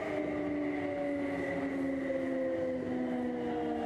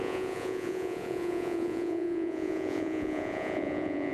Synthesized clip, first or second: second